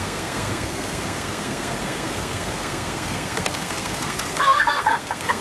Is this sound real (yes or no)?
no